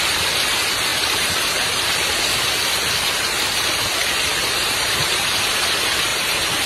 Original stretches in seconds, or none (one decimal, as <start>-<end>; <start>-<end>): 0.0-0.9; 2.2-4.3; 5.6-6.1